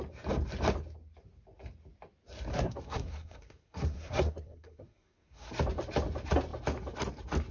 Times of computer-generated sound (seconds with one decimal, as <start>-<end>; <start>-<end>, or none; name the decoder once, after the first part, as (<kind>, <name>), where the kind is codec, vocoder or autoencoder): 2.5-5.5 (codec, SNAC)